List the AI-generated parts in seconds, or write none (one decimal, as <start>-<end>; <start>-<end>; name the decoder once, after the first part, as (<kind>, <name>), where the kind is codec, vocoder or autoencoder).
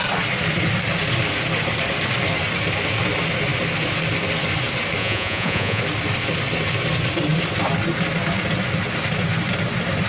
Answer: 5.0-5.8 (vocoder, Vocos)